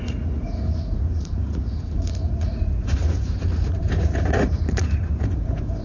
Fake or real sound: fake